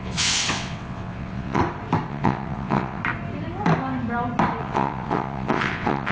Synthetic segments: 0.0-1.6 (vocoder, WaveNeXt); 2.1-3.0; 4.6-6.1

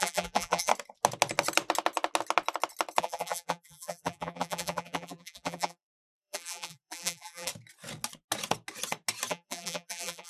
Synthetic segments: 0.0-0.7 (vocoder, BigVGAN v2); 3.0-7.5; 9.3-10.3